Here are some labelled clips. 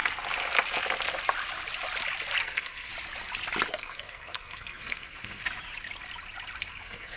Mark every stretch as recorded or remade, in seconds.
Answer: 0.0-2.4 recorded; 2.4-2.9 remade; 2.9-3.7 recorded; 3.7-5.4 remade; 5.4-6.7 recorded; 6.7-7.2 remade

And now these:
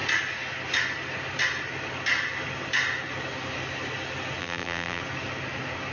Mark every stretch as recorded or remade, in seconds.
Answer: 0.0-4.4 recorded; 4.4-5.0 remade; 5.0-5.9 recorded

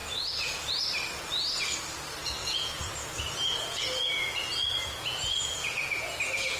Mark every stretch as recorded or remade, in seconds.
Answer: 0.0-0.7 remade; 0.7-2.4 recorded; 2.4-6.6 remade